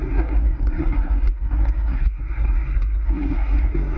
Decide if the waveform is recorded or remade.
remade